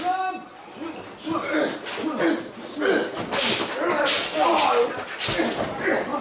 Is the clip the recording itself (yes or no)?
yes